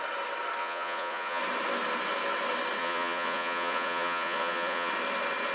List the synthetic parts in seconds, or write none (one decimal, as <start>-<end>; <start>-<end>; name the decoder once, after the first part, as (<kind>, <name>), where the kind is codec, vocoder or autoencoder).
0.6-1.4 (vocoder, Vocos); 2.8-4.9